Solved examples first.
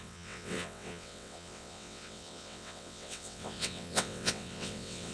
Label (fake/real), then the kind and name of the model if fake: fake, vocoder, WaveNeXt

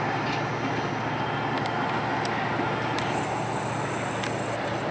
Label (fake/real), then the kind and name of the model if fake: real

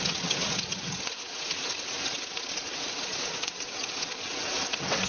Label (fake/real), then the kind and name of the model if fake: fake, vocoder, WaveNeXt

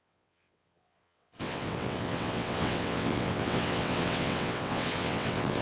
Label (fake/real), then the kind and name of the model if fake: fake, vocoder, WaveNeXt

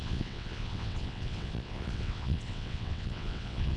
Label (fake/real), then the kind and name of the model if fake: fake, vocoder, WaveNeXt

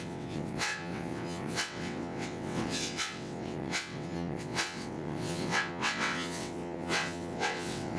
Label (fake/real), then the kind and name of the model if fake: fake, vocoder, WaveNeXt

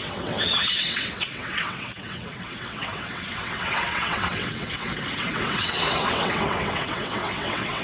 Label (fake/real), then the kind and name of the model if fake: fake, vocoder, WaveNeXt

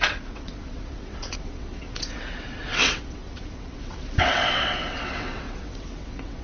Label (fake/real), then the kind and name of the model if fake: fake, vocoder, WaveNeXt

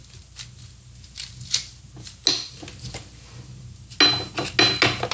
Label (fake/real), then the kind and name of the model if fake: real